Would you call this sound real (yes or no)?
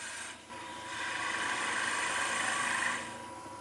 no